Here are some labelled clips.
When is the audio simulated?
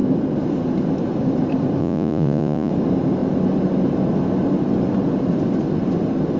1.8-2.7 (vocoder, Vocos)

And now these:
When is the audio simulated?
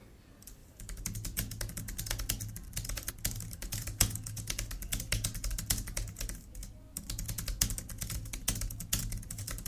none